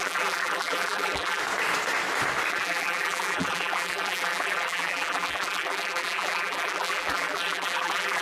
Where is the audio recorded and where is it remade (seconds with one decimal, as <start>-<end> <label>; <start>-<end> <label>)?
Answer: 0.0-1.4 remade; 1.4-2.5 recorded; 2.5-8.2 remade